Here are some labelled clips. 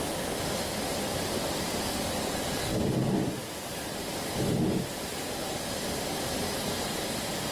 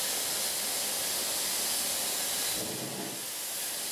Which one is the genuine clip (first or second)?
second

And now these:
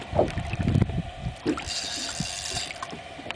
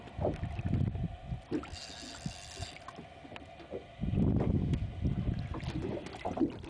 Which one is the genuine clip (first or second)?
second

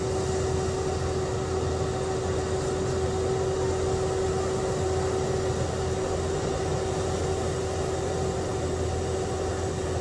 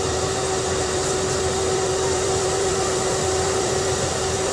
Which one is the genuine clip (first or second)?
first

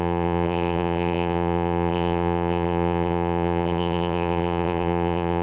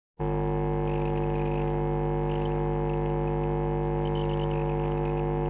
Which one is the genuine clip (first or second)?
second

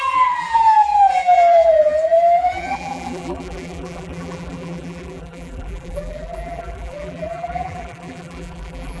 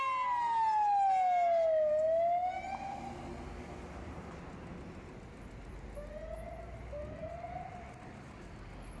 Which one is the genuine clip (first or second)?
second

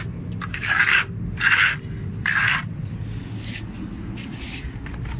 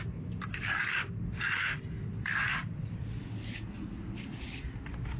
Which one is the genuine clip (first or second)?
first